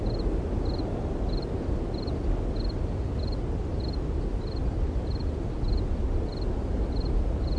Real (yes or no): yes